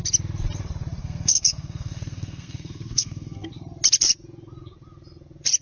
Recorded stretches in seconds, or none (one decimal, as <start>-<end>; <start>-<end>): 0.0-1.0; 3.5-5.6